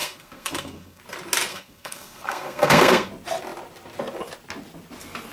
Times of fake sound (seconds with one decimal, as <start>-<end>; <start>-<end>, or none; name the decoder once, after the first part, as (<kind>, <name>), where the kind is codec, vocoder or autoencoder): 0.0-1.0 (codec, SNAC); 1.5-3.1